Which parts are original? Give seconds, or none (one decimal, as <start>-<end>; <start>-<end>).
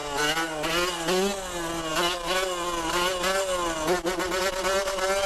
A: 0.0-5.3